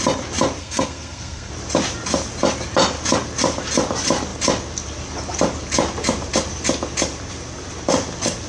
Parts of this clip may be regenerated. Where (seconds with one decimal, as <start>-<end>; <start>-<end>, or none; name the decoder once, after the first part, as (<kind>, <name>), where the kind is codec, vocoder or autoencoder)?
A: 0.6-1.5 (codec, SNAC)